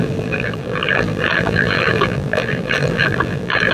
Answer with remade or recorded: remade